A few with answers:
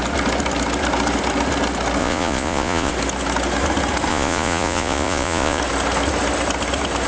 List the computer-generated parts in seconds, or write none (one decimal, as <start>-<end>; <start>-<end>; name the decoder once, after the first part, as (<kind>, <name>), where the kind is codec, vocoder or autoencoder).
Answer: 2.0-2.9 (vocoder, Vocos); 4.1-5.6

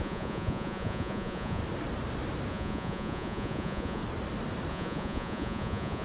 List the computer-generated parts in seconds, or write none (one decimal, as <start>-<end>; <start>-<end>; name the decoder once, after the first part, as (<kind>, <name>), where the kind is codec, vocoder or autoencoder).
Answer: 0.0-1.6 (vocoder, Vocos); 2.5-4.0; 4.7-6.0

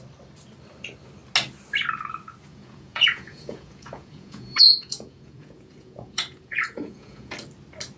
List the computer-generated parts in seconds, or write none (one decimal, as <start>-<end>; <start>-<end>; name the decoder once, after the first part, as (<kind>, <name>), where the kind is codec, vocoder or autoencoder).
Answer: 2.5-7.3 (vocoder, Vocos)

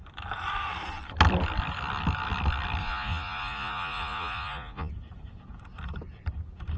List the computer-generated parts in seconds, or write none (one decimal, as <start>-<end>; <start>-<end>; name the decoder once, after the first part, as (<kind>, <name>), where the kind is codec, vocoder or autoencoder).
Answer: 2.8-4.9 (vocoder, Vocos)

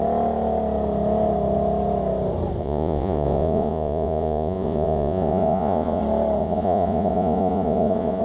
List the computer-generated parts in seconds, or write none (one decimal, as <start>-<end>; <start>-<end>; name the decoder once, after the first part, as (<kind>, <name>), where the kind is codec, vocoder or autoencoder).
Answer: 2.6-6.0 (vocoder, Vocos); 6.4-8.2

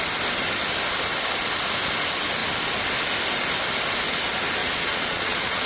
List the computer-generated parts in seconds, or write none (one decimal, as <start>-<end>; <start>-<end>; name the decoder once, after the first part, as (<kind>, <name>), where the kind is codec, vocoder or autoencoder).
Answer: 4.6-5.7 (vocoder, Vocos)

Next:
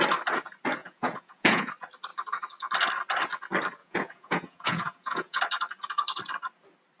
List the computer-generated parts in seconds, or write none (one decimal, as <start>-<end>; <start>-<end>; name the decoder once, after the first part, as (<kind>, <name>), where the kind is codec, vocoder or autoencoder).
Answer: 0.8-1.7 (vocoder, Vocos); 3.8-5.4